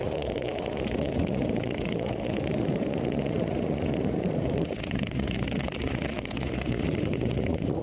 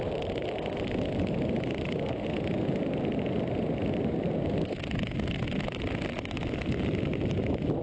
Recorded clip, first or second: second